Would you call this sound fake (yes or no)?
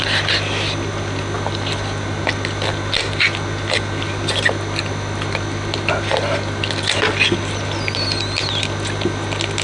no